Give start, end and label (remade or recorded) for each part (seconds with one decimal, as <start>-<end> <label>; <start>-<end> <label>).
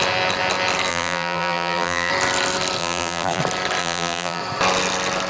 0.0-0.9 recorded; 0.9-2.1 remade; 2.1-2.8 recorded; 2.8-3.4 remade; 3.4-3.8 recorded; 3.8-4.4 remade; 4.4-5.3 recorded